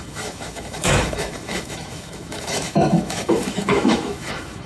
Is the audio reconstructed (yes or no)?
yes